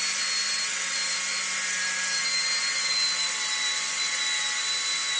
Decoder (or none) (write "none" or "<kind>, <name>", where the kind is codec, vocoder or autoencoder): none